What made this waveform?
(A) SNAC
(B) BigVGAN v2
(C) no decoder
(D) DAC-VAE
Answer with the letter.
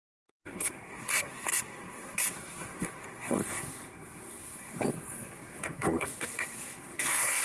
A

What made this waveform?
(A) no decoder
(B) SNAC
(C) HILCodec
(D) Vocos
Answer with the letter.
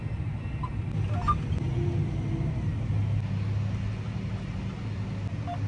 A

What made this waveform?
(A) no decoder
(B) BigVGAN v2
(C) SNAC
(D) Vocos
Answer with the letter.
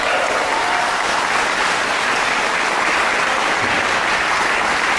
A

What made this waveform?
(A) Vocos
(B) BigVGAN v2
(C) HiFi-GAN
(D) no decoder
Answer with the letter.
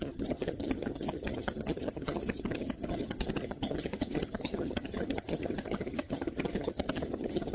C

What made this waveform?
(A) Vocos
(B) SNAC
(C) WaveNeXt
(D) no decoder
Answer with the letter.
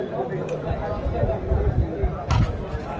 D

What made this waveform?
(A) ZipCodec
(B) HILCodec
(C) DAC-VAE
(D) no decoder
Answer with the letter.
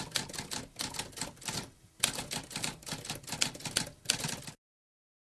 D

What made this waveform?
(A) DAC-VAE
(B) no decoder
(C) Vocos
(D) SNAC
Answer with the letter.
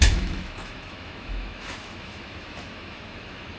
A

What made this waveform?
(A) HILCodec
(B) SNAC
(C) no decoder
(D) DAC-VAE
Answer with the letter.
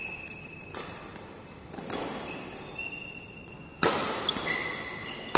C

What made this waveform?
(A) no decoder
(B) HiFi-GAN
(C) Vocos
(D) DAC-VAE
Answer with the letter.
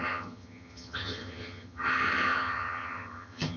B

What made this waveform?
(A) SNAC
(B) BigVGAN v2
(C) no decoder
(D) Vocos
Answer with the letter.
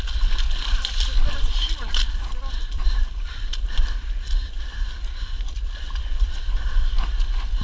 C